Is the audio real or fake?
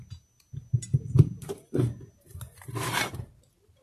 real